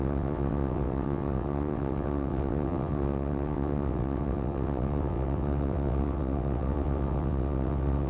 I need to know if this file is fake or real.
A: fake